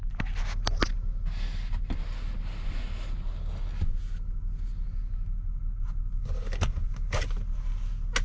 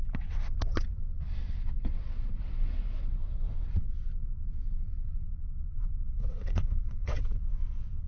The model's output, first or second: second